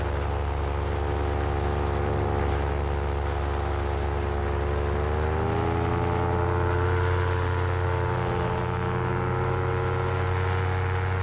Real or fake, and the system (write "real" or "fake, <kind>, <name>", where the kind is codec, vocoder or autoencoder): real